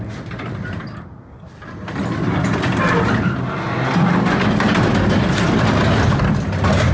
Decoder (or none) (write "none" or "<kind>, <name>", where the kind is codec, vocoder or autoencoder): none